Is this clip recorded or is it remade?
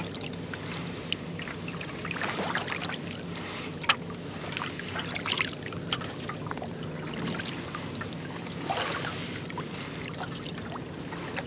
recorded